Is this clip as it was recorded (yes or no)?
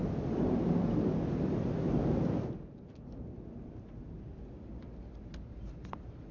yes